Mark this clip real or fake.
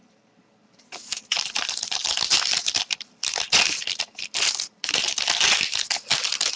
real